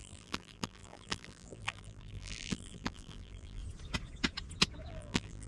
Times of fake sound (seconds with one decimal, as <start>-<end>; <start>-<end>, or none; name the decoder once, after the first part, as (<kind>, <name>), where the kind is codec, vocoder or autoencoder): 0.0-3.6 (vocoder, BigVGAN v2); 4.9-5.5